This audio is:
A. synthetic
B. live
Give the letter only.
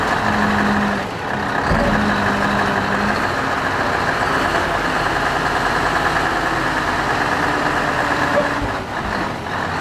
B